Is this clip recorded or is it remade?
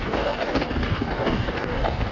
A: remade